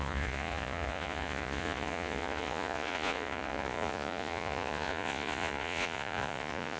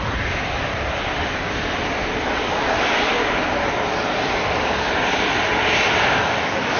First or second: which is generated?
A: first